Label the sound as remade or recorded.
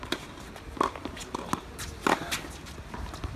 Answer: recorded